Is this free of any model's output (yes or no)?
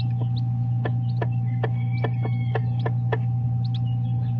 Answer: yes